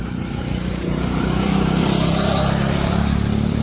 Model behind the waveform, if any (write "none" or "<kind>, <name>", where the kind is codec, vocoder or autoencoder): vocoder, BigVGAN v2